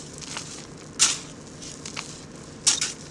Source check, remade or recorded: recorded